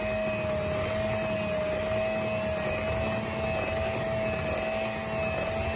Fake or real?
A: real